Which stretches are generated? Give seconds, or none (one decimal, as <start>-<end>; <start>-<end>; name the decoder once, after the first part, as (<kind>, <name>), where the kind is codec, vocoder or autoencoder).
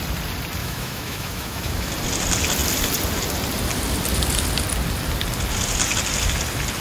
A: 0.6-1.9 (autoencoder, DAC-VAE)